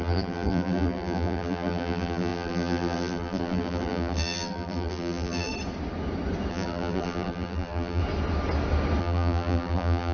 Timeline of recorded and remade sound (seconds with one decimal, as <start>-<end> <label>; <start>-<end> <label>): 0.0-5.5 remade; 5.5-6.5 recorded; 6.5-8.0 remade; 8.0-9.0 recorded; 9.0-10.1 remade